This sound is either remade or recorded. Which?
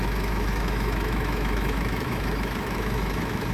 remade